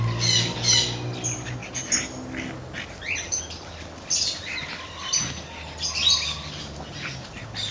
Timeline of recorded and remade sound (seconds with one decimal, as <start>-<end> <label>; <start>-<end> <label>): 0.0-7.7 recorded